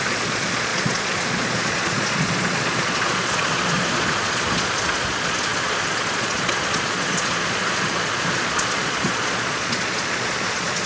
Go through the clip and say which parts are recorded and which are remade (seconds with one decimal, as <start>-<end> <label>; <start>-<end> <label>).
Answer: 0.0-10.9 remade